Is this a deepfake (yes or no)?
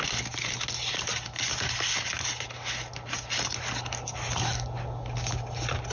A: no